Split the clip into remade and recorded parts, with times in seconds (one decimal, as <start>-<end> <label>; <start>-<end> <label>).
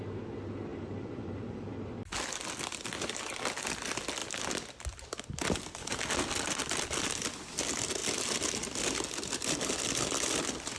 0.0-0.7 recorded; 0.7-1.7 remade; 1.7-10.8 recorded